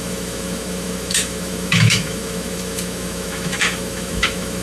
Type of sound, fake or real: fake